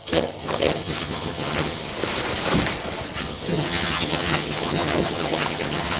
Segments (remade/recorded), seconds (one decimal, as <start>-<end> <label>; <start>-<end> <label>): 0.0-1.9 remade; 1.9-3.2 recorded; 3.2-6.0 remade